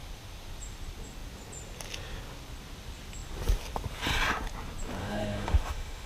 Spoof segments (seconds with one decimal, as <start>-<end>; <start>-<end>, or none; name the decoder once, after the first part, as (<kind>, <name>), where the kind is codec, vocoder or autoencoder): 5.0-6.1 (autoencoder, DAC-VAE)